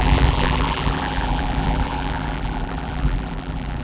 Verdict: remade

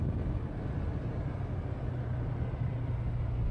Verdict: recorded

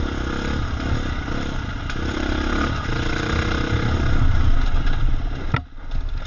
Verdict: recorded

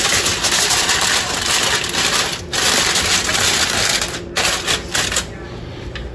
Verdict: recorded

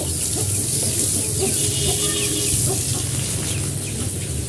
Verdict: recorded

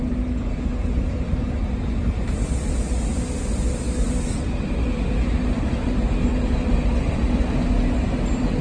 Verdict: recorded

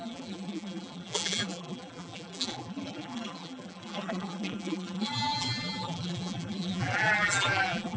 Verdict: remade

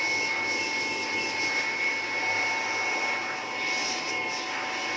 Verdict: recorded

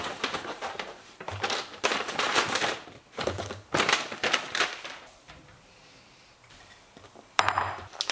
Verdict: remade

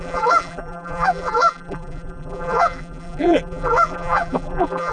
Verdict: remade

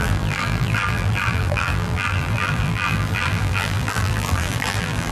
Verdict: remade